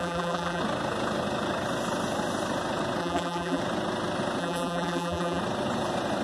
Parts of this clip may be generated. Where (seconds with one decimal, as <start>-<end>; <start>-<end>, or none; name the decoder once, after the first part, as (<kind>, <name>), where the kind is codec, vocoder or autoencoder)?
0.0-0.6 (vocoder, BigVGAN v2); 3.0-3.6; 4.4-5.4